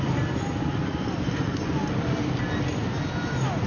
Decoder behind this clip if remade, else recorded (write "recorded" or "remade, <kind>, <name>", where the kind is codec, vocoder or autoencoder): recorded